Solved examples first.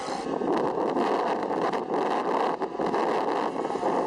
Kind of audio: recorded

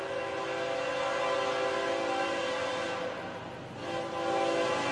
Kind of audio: recorded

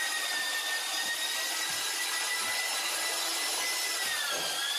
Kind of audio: recorded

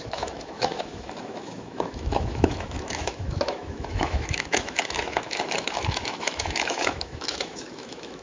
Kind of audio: remade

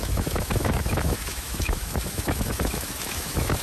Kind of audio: remade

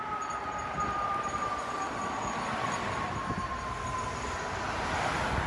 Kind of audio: recorded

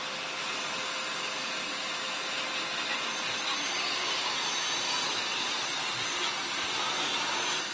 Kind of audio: recorded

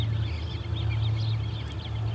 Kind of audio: recorded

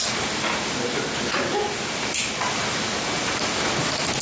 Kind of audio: recorded